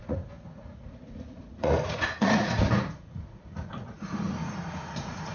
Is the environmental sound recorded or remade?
remade